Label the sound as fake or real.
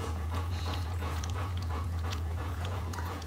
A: fake